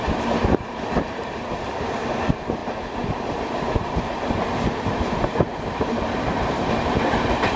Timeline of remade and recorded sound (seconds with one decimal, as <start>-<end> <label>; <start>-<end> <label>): 0.0-7.6 remade